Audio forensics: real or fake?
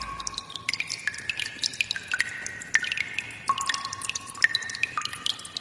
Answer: real